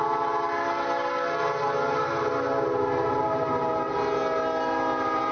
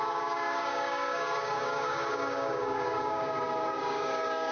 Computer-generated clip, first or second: second